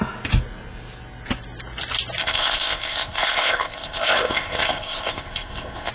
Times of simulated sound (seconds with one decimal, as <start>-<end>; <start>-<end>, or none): 2.2-5.9

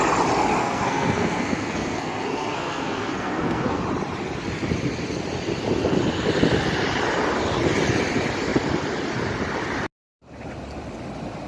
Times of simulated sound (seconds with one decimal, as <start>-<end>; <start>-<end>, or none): 0.6-3.8

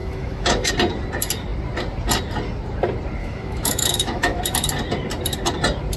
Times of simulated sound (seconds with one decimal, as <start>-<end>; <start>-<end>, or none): 0.0-0.7; 3.2-4.4

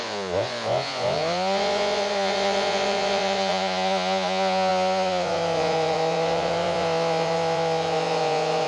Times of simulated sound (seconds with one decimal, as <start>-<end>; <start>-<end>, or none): 0.0-8.7

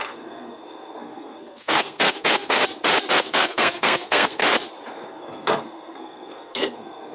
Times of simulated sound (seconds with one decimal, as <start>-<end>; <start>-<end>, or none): 0.0-2.6; 3.1-4.4; 4.9-7.1

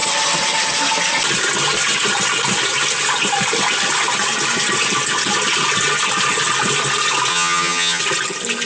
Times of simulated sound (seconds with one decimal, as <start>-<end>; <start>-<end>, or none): 7.3-8.0

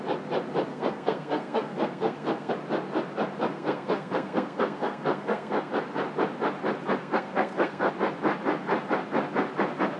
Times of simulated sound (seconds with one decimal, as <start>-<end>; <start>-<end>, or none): 0.7-2.5; 3.5-5.7; 7.0-7.9